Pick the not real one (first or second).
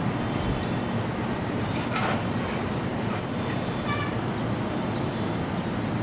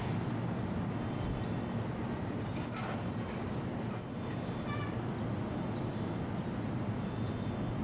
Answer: first